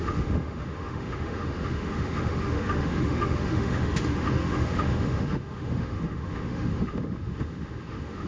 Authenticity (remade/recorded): remade